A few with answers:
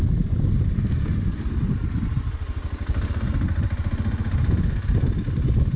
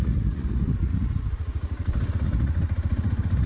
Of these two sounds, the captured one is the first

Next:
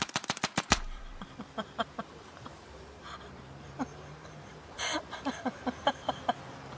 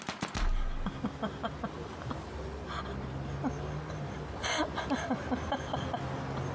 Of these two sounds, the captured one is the second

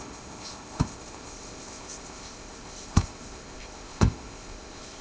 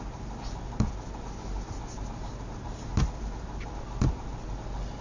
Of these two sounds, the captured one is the second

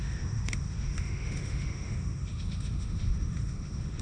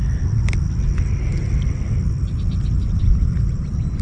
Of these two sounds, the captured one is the second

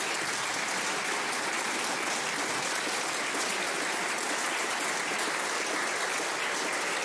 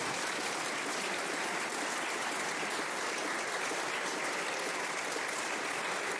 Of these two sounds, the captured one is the first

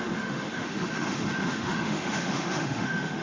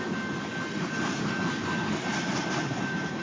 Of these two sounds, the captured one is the second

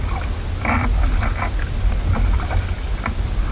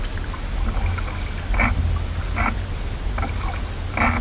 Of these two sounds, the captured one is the second